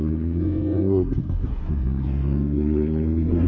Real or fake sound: fake